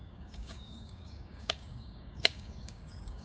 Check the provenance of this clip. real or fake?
fake